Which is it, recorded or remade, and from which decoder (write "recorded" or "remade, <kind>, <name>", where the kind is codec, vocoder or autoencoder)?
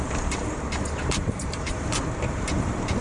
remade, vocoder, BigVGAN v2